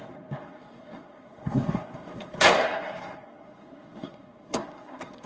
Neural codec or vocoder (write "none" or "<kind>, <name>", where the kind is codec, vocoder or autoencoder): codec, SNAC